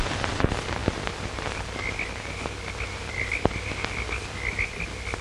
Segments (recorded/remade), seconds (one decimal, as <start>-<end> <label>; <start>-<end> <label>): 0.0-0.8 recorded; 0.8-3.9 remade; 3.9-5.2 recorded